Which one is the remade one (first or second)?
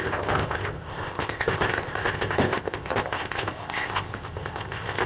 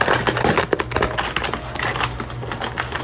first